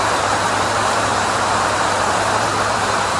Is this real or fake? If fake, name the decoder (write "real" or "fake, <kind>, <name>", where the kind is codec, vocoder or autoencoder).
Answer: fake, vocoder, BigVGAN v2